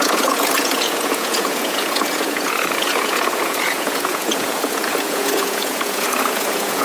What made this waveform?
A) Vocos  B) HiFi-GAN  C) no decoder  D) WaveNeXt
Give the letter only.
A